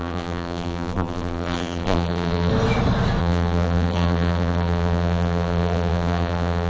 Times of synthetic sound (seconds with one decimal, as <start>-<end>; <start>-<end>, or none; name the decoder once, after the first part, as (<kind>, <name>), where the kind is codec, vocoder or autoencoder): 0.0-2.5 (vocoder, BigVGAN v2); 3.2-6.7